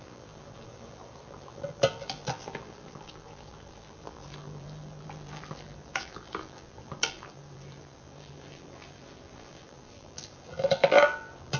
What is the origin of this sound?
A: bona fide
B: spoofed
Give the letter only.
B